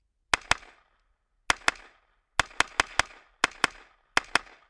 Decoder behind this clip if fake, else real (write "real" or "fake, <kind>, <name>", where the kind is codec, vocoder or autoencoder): real